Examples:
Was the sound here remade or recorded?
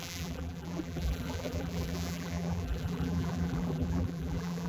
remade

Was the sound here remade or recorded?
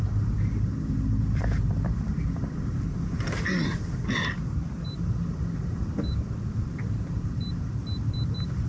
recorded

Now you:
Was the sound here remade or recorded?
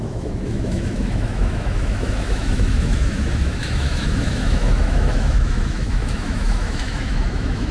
remade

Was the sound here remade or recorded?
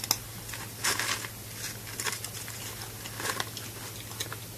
recorded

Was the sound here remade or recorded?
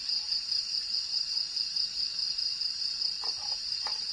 remade